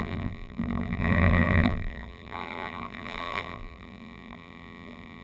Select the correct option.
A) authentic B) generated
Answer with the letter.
B